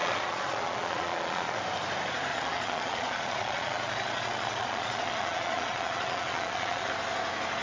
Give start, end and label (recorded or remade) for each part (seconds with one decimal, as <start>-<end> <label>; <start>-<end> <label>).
0.0-1.6 remade; 1.6-2.3 recorded; 2.3-6.9 remade; 6.9-7.6 recorded